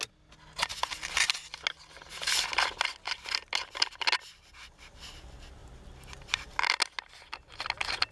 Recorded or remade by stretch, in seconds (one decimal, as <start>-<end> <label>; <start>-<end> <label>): 0.0-8.1 recorded